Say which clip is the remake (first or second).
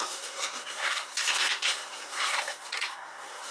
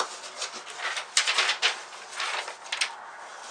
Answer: first